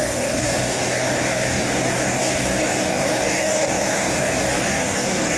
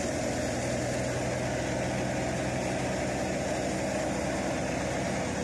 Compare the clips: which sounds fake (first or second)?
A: first